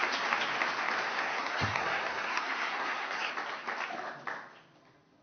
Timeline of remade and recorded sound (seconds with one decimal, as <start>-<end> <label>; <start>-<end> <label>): 0.0-1.1 recorded; 1.1-3.3 remade; 3.3-5.2 recorded